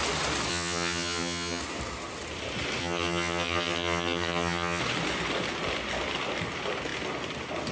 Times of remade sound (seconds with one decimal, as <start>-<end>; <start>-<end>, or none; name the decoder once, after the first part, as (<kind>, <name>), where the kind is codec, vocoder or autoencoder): 0.5-1.6 (vocoder, HiFi-GAN); 2.8-4.8